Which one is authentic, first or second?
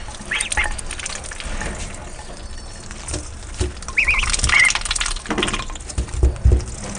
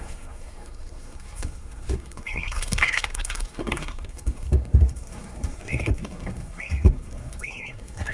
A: first